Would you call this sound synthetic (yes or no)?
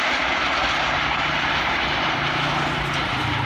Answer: no